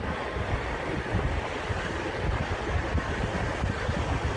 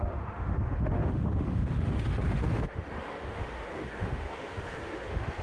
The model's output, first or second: second